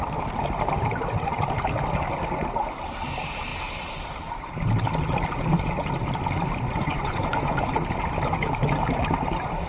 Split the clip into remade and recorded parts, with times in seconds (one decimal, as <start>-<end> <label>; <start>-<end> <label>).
0.0-6.8 recorded; 6.8-7.7 remade; 7.7-9.7 recorded